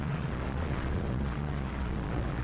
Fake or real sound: fake